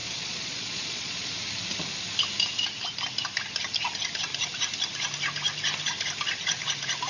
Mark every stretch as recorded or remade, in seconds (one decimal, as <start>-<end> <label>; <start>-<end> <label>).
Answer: 0.0-1.3 remade; 1.3-7.1 recorded